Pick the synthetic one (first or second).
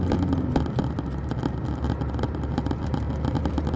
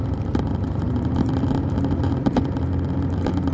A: second